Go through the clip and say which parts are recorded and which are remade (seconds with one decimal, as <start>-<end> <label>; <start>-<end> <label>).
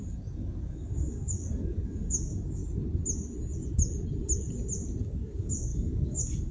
0.0-2.6 remade; 2.6-5.0 recorded; 5.0-6.5 remade